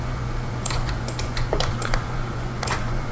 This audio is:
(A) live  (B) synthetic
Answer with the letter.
B